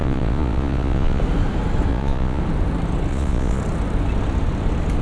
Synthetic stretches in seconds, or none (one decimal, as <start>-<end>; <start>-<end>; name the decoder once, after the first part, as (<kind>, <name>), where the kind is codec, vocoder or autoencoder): 0.0-1.2 (vocoder, Vocos); 1.9-2.4; 3.1-3.6